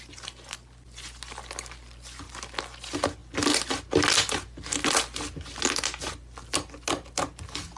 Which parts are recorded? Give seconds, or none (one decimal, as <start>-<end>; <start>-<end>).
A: 0.0-7.8